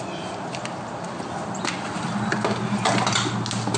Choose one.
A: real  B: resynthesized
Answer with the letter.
A